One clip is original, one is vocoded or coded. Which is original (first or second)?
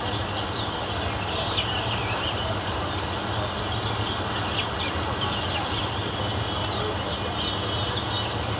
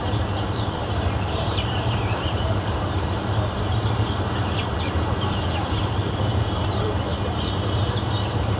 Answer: first